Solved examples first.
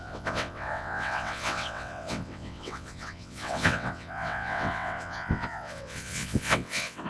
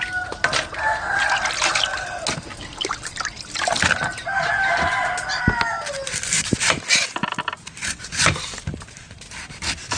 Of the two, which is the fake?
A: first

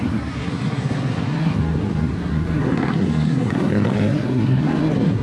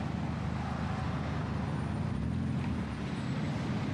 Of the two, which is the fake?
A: first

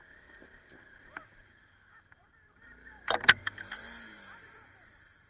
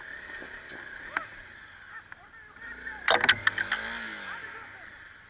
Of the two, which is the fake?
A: first